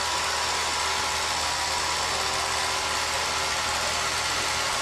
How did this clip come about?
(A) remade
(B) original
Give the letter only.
B